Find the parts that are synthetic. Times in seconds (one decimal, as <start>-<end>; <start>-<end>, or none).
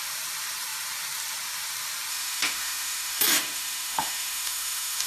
2.1-5.1